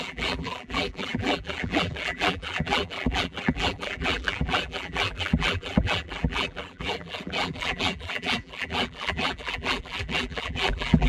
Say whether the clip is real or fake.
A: fake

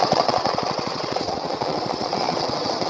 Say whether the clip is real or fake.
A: fake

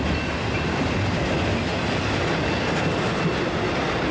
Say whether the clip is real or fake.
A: real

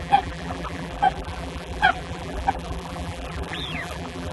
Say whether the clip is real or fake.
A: fake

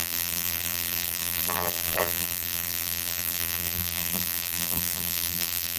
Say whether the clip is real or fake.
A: fake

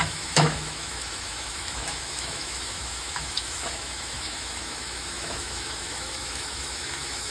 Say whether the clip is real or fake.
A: fake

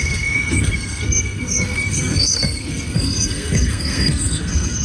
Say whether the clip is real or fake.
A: fake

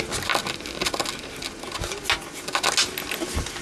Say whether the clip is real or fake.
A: real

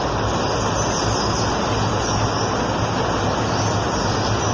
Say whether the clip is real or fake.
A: real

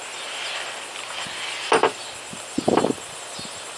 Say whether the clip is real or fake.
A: real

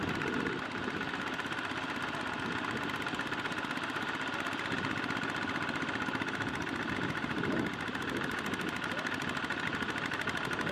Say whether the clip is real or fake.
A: fake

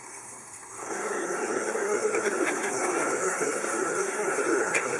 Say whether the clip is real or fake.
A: fake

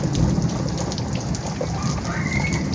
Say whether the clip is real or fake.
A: real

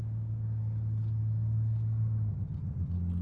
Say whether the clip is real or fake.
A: real